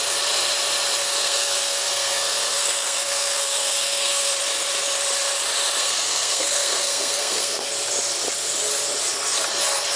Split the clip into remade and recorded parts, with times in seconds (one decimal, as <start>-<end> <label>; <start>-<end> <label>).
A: 0.0-1.0 recorded; 1.0-4.3 remade; 4.3-5.8 recorded; 5.8-7.7 remade; 7.7-10.0 recorded